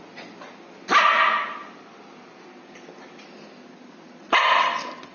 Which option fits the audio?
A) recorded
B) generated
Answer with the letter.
A